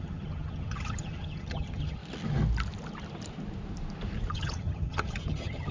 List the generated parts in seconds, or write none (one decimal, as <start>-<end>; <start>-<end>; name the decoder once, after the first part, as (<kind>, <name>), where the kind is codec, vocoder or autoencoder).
0.0-2.0 (vocoder, HiFi-GAN); 4.3-5.7